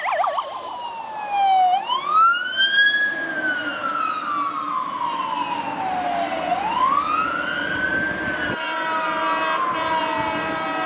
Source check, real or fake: real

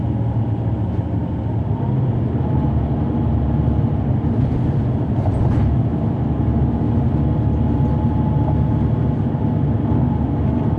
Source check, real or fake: real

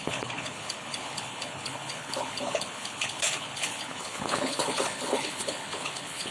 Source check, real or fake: fake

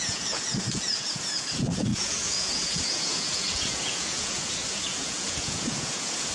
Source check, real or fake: fake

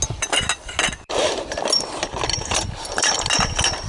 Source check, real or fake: real